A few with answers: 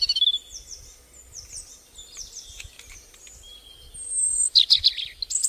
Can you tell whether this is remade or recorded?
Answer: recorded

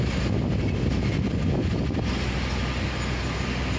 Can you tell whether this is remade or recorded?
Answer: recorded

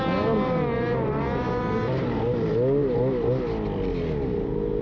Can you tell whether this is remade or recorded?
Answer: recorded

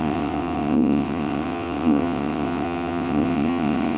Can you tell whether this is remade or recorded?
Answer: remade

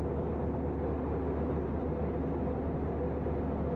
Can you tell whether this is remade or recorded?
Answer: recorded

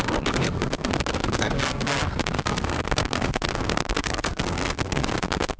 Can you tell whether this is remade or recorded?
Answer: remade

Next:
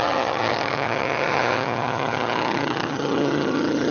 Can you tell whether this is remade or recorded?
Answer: remade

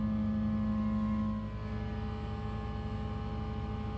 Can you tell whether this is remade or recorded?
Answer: recorded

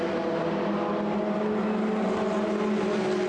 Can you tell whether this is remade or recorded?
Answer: recorded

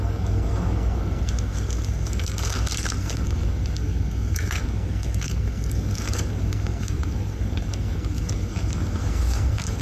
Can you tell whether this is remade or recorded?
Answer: remade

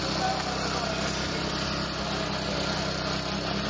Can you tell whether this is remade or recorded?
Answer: recorded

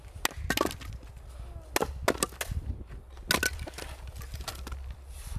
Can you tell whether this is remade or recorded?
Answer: recorded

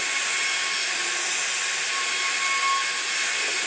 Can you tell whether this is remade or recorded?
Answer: recorded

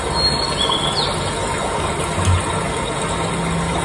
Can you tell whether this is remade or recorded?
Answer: recorded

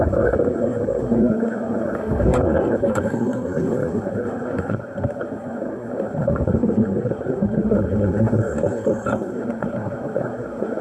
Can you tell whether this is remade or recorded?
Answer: remade